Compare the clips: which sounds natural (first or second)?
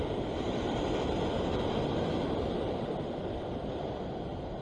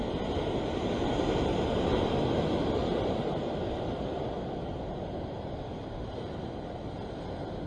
second